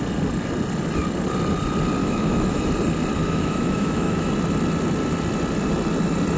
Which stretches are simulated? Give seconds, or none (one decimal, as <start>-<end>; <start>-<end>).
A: 2.0-2.7; 3.2-4.3